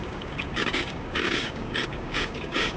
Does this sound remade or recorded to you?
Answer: remade